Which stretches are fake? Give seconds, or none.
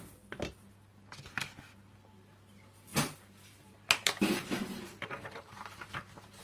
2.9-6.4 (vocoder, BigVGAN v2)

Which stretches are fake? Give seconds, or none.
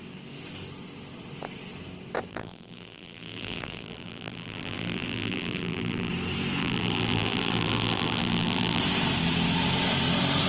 2.3-6.1 (vocoder, BigVGAN v2); 6.6-8.8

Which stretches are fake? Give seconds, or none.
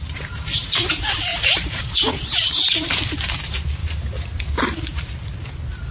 0.0-4.9 (vocoder, BigVGAN v2)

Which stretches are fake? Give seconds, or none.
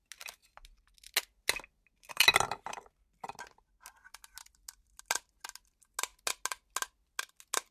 none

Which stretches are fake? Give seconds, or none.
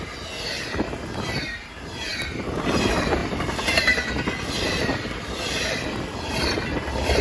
3.2-7.2 (vocoder, BigVGAN v2)